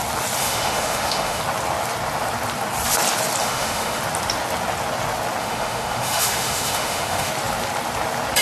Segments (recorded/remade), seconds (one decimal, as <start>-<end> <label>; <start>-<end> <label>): 0.0-0.4 recorded; 0.4-1.4 remade; 1.4-3.4 recorded; 3.4-4.0 remade; 4.0-5.4 recorded; 5.4-7.3 remade; 7.3-8.4 recorded